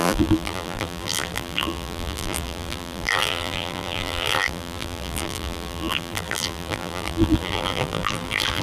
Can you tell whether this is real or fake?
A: fake